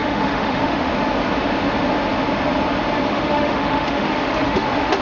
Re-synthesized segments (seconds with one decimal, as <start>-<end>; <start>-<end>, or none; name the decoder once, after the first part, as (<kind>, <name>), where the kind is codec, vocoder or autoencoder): 0.0-0.9 (autoencoder, DAC-VAE); 3.1-5.0

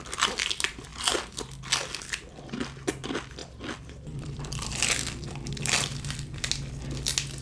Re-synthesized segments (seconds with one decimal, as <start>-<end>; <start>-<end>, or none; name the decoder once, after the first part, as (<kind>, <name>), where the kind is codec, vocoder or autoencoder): 3.4-6.5 (vocoder, BigVGAN v2)

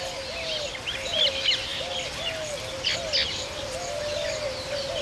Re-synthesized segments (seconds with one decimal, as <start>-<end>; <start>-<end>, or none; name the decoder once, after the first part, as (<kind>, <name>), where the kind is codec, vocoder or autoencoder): none

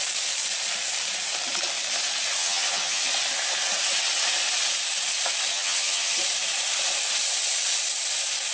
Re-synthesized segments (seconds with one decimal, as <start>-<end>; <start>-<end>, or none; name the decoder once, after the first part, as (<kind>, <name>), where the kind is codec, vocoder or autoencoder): 2.4-3.0 (vocoder, HiFi-GAN); 5.5-6.2